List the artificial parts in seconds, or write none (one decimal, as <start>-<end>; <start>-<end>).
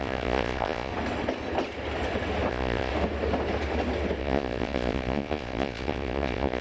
0.0-0.9; 2.5-2.9; 4.2-6.6